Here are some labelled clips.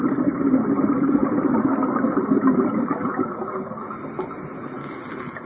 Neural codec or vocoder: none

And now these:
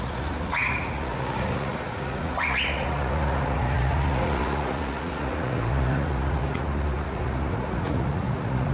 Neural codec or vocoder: vocoder, Vocos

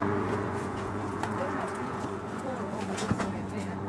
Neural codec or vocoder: vocoder, Vocos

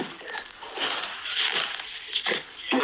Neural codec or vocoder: none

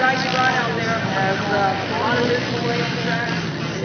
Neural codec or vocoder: none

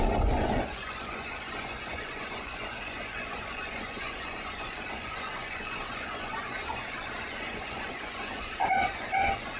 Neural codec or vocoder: vocoder, Vocos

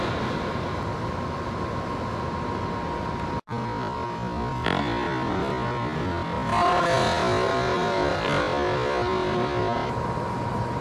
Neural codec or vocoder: none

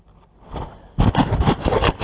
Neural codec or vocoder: none